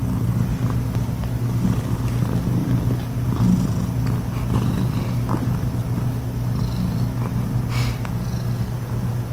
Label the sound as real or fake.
real